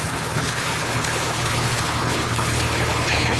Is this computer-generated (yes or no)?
yes